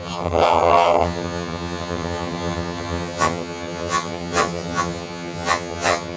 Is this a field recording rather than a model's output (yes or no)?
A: no